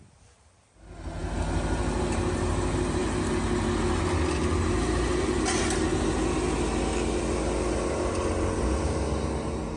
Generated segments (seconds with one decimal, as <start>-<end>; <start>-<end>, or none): none